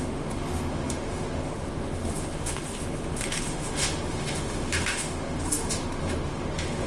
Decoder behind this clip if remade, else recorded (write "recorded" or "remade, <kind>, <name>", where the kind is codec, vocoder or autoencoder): remade, autoencoder, DAC-VAE